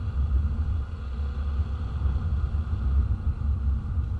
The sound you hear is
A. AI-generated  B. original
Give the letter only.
B